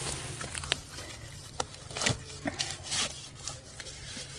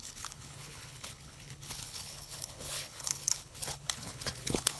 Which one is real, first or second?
first